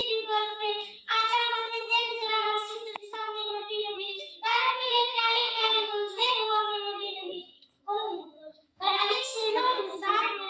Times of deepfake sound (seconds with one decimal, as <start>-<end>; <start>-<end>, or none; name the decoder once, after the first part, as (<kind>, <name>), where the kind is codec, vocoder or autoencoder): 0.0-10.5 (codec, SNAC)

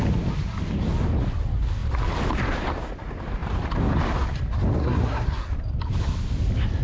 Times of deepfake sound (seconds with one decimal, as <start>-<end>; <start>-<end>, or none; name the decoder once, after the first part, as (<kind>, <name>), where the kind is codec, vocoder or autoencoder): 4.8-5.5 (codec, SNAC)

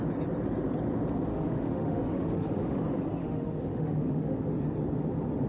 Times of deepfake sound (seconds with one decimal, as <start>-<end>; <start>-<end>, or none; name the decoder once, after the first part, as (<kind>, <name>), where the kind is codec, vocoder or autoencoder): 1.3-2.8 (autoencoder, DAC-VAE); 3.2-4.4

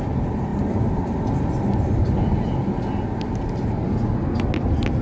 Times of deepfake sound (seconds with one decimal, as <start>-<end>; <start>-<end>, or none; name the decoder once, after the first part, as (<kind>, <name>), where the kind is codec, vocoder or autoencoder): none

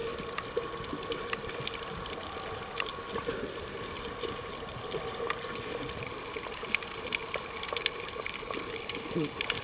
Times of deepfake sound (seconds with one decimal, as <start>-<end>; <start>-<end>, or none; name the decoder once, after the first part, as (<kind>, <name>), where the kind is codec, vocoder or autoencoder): none

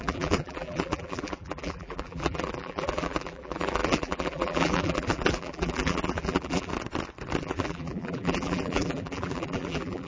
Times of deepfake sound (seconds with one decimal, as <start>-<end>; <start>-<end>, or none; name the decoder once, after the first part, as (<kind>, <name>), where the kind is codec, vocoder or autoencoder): 0.0-6.7 (vocoder, BigVGAN v2); 7.4-10.1

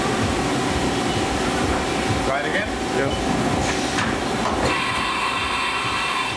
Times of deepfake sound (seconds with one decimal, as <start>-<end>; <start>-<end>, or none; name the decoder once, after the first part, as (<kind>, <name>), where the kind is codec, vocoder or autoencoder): 0.0-6.4 (vocoder, BigVGAN v2)